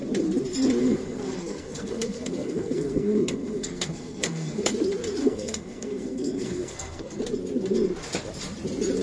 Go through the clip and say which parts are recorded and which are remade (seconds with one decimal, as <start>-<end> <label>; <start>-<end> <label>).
0.0-0.8 recorded; 0.8-4.7 remade; 4.7-5.2 recorded; 5.2-7.2 remade; 7.2-9.0 recorded